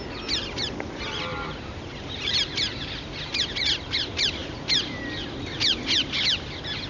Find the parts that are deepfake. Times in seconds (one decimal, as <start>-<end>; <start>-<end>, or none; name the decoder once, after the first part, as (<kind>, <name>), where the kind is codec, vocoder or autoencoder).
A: 1.3-3.2 (vocoder, BigVGAN v2); 4.4-5.0

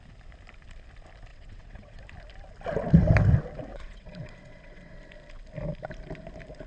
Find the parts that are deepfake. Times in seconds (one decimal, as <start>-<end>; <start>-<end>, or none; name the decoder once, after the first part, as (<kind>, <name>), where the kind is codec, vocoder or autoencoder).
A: 1.3-2.0 (vocoder, WaveNeXt); 3.7-4.9